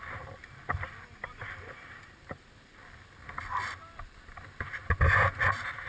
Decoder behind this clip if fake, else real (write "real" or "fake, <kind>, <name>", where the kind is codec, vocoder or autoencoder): real